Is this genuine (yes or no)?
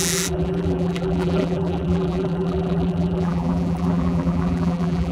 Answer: no